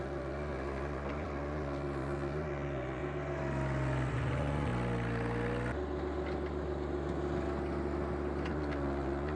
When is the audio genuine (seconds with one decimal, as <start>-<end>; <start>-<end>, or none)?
3.0-4.1; 4.7-8.5